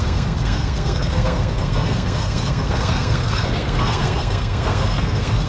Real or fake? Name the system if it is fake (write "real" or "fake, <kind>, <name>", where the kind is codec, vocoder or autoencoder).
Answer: fake, codec, SNAC